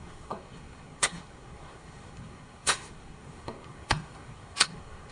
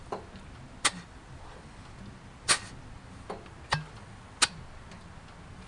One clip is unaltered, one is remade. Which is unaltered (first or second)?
second